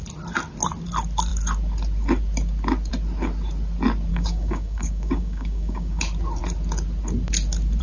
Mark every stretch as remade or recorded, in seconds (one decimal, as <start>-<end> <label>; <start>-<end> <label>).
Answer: 0.0-4.1 recorded; 4.1-6.0 remade; 6.0-7.8 recorded